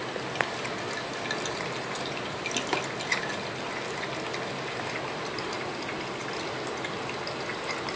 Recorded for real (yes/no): yes